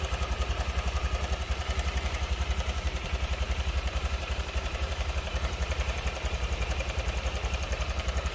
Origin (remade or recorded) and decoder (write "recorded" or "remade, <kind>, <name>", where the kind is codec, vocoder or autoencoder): remade, vocoder, BigVGAN v2